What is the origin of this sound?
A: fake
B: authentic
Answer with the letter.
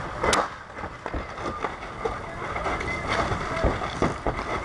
B